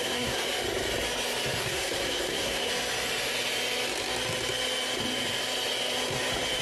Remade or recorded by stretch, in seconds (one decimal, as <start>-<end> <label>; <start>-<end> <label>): 0.0-0.4 remade; 0.4-1.6 recorded; 1.6-2.7 remade; 2.7-6.6 recorded